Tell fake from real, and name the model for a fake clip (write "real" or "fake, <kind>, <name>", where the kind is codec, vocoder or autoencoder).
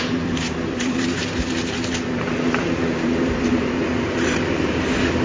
fake, vocoder, BigVGAN v2